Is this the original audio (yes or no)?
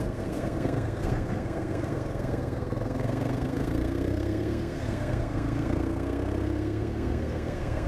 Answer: no